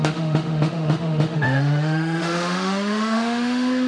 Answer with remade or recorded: remade